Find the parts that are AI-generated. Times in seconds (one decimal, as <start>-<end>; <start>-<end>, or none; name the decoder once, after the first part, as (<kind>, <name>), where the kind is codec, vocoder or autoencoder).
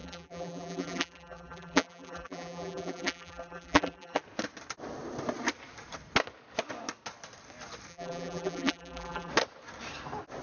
0.0-4.2 (vocoder, BigVGAN v2); 7.9-9.3